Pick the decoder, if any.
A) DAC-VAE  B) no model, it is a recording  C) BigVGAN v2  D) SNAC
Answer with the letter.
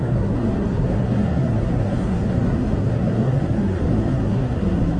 D